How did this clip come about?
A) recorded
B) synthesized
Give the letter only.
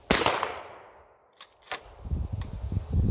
A